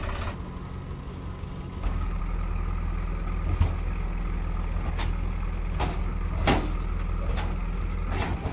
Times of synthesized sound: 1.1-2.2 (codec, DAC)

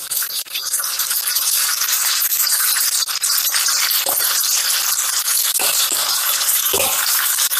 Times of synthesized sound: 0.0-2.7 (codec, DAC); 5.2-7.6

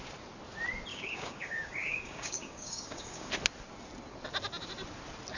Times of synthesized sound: 0.9-3.3 (codec, DAC)

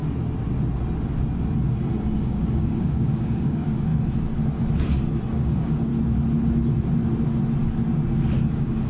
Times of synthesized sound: 2.2-3.9 (codec, DAC); 5.3-5.9; 8.5-8.9

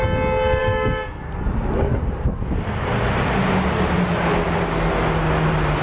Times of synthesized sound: 0.6-1.3 (codec, DAC)